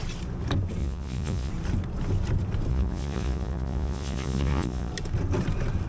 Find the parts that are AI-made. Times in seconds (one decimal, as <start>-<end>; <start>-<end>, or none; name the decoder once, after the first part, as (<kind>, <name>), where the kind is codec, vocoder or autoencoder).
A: 0.8-1.5 (vocoder, Vocos); 2.7-4.9